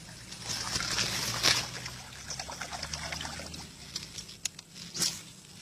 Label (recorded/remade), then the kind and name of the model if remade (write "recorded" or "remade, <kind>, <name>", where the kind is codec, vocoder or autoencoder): recorded